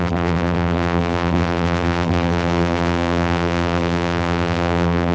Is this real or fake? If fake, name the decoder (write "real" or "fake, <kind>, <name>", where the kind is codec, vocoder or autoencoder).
fake, vocoder, BigVGAN v2